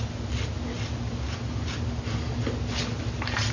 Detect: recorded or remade recorded